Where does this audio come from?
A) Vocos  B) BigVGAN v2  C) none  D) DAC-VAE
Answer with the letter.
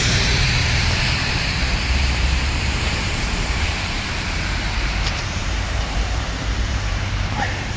B